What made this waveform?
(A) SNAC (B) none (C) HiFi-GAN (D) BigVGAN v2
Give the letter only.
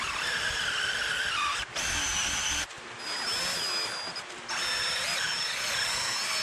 B